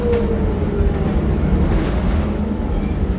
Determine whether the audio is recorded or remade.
recorded